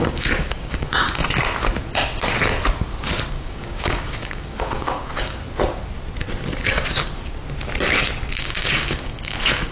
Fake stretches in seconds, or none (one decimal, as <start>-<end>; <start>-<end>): 0.0-1.2; 3.3-5.4; 8.3-9.7

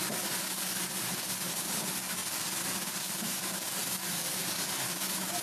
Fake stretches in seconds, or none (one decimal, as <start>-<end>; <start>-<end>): 0.0-5.4

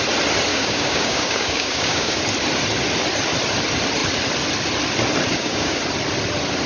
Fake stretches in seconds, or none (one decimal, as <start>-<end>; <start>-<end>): 0.5-2.2; 5.3-5.8

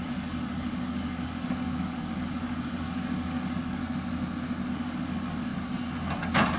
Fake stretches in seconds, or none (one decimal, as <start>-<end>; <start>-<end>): 0.0-3.8; 4.7-5.5

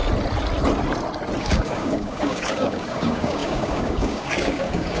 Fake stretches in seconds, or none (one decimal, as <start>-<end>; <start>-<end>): 1.4-5.0

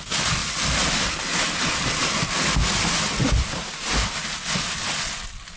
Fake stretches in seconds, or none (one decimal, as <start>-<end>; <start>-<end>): none

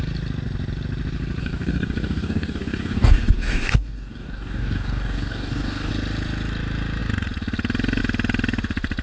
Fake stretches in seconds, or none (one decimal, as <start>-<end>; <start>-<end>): 1.4-5.9

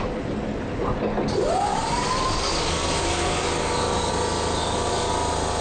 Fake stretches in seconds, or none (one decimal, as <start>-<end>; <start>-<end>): 1.7-4.1; 4.6-5.1